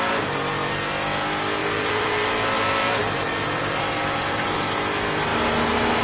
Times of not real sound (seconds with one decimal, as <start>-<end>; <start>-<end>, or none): 1.6-4.8